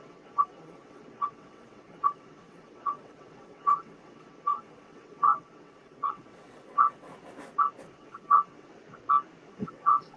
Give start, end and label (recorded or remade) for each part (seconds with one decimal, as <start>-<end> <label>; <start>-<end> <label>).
0.0-7.1 remade; 7.1-7.9 recorded; 7.9-8.7 remade; 8.7-9.5 recorded; 9.5-10.2 remade